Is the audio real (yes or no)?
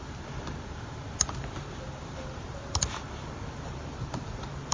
yes